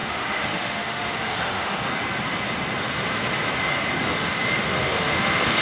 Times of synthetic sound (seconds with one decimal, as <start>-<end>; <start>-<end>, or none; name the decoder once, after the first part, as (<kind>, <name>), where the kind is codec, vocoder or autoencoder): 0.0-1.9 (autoencoder, DAC-VAE); 4.5-5.6